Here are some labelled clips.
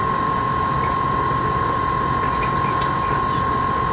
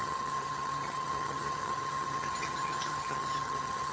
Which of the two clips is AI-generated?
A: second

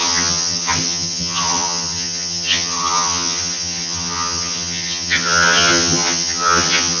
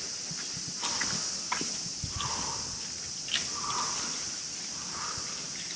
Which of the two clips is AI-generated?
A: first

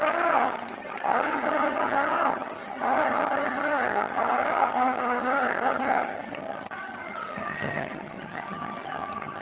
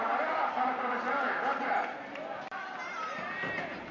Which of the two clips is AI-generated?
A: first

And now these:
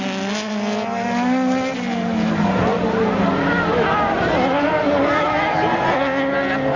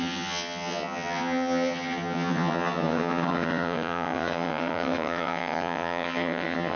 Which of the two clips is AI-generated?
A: second